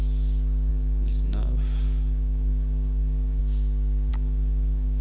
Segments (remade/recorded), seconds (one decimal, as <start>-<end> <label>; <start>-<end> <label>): 0.0-0.7 recorded; 0.7-3.4 remade; 3.4-4.1 recorded; 4.1-5.0 remade